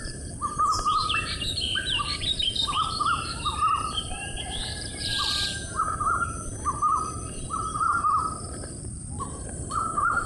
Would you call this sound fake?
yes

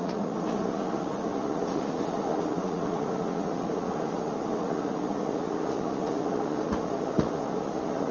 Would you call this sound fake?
yes